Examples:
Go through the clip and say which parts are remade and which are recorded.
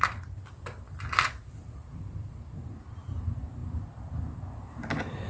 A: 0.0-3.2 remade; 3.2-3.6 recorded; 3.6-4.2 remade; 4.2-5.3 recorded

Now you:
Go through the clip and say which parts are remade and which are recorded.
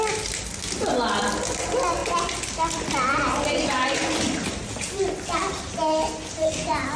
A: 0.0-7.0 recorded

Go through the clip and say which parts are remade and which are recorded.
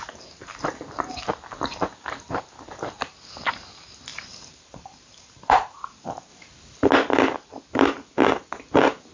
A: 0.0-4.1 recorded; 4.1-5.8 remade; 5.8-6.3 recorded; 6.3-6.9 remade; 6.9-9.1 recorded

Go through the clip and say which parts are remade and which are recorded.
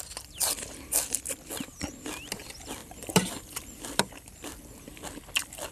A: 0.0-2.8 recorded; 2.8-4.6 remade; 4.6-5.7 recorded